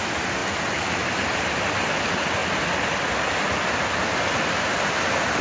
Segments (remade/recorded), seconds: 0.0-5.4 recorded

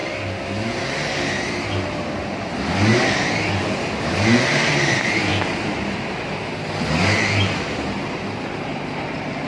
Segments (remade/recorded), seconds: 0.0-4.0 recorded; 4.0-5.3 remade; 5.3-8.4 recorded; 8.4-9.5 remade